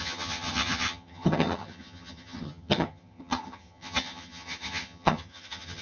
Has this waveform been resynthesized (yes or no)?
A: yes